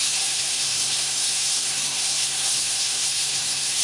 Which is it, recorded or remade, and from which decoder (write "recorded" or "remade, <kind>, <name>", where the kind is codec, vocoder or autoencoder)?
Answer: remade, codec, SNAC